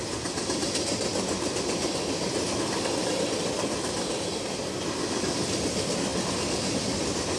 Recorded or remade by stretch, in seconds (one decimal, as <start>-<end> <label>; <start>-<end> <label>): 0.0-7.4 recorded